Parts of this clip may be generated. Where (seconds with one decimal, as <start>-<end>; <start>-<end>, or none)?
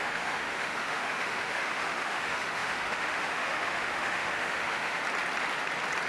0.0-5.0